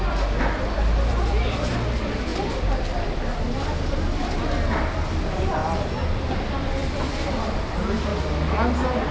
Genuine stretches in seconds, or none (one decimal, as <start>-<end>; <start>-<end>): 5.6-6.2; 8.1-9.1